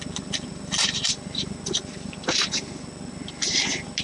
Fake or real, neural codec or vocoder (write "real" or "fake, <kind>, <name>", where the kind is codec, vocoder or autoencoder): real